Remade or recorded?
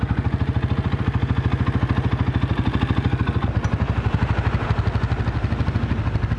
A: recorded